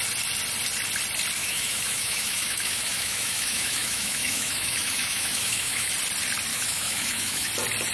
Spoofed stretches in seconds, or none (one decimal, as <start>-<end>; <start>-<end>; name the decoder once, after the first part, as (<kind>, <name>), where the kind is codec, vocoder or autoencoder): 1.4-5.9 (autoencoder, DAC-VAE); 6.5-7.5